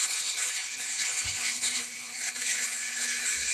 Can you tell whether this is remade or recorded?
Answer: remade